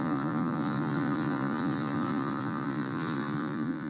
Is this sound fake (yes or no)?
yes